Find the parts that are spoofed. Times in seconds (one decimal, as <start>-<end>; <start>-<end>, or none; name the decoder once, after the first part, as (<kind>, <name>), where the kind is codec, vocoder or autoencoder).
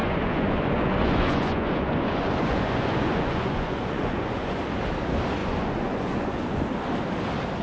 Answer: 0.0-4.6 (vocoder, Vocos); 5.4-6.6